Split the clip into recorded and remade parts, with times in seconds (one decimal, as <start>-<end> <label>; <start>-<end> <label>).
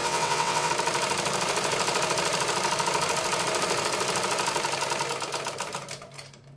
0.0-0.7 remade; 0.7-6.6 recorded